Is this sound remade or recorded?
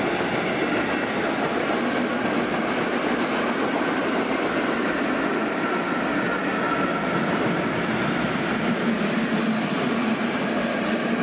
recorded